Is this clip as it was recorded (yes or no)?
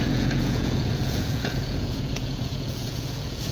no